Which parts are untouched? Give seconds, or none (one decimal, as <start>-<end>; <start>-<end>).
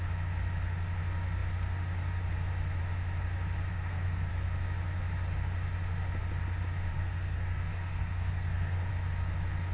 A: 0.0-3.7; 4.3-6.9; 8.9-9.7